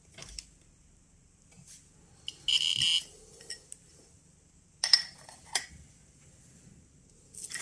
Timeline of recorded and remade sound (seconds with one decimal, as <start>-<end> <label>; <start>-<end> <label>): 0.0-7.6 recorded